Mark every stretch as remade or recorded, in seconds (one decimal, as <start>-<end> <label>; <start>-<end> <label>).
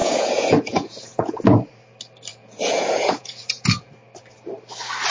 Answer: 0.0-1.4 remade; 1.4-2.3 recorded; 2.3-3.9 remade; 3.9-5.1 recorded